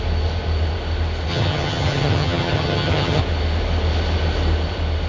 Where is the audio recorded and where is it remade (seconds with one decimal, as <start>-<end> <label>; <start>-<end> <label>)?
0.0-1.3 recorded; 1.3-3.2 remade; 3.2-5.1 recorded